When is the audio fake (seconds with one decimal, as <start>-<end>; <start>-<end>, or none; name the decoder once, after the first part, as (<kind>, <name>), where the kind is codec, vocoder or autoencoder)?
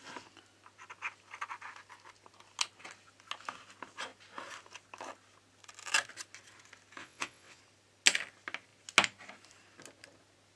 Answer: 7.0-7.6 (vocoder, WaveNeXt)